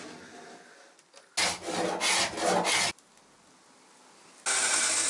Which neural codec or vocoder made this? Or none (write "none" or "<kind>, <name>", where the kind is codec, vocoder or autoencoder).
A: none